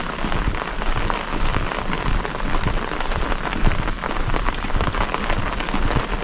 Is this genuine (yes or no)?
yes